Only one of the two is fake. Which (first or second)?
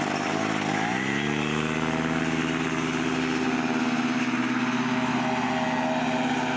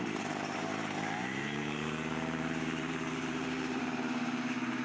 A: second